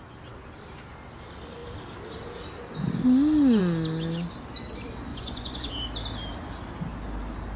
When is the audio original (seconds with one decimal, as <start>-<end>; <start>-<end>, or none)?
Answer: 0.0-5.1; 5.7-7.6